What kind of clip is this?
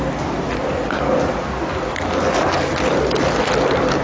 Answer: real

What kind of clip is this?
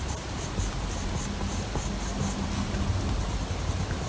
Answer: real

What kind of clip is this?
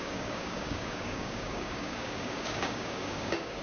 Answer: fake